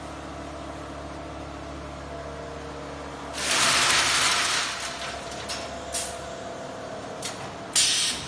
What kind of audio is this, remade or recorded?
recorded